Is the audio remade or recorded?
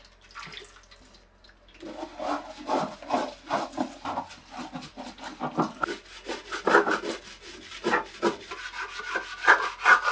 recorded